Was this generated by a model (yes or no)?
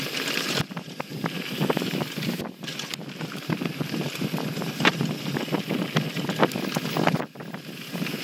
no